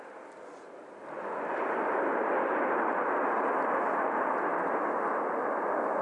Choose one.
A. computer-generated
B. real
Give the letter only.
B